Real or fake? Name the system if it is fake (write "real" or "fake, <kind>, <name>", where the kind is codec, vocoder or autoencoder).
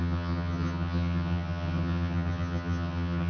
fake, vocoder, HiFi-GAN